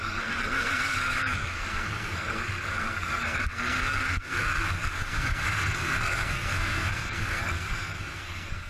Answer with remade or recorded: remade